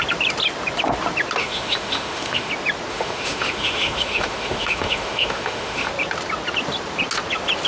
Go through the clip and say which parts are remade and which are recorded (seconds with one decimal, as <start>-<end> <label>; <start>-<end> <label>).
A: 0.0-1.4 recorded; 1.4-2.5 remade; 2.5-2.9 recorded; 2.9-5.9 remade; 5.9-7.7 recorded